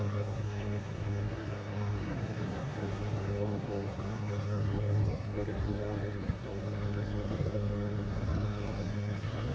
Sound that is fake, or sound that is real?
fake